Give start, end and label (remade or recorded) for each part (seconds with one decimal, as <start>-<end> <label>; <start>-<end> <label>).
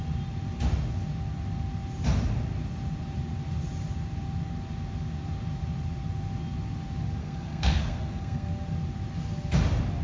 0.0-7.2 recorded; 7.2-8.5 remade; 8.5-10.0 recorded